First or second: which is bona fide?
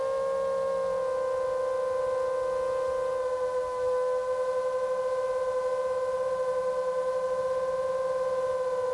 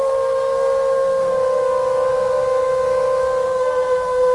first